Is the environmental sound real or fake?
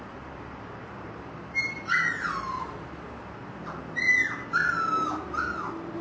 real